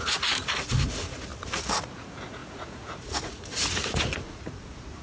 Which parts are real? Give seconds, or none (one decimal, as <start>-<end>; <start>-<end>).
1.3-1.9